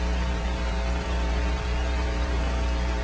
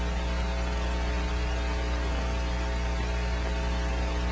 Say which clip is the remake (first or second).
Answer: first